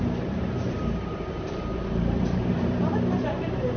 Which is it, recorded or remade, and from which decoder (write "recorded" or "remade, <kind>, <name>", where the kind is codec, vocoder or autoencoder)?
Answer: remade, vocoder, BigVGAN v2